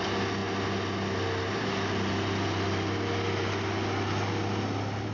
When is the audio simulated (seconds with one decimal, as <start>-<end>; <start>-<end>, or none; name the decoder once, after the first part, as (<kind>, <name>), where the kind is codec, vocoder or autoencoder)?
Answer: none